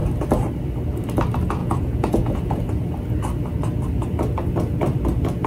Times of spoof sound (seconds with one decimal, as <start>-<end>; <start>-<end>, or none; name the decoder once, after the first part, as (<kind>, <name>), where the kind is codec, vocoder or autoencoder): 1.6-2.3 (vocoder, Vocos)

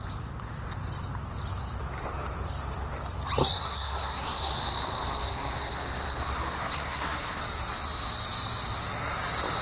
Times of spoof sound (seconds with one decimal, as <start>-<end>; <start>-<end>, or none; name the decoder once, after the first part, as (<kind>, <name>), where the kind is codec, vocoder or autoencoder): 3.4-4.5 (codec, SNAC); 6.6-7.4